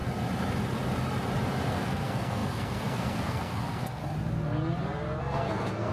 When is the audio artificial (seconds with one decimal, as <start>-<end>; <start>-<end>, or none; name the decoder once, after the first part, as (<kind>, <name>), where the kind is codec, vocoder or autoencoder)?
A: 1.7-4.0 (codec, SNAC); 5.2-5.9